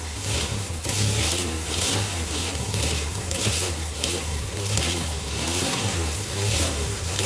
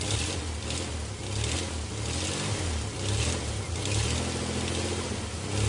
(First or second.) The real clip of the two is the second